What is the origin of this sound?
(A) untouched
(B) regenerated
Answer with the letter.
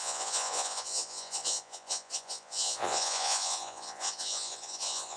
B